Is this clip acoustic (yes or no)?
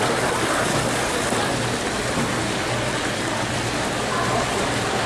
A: no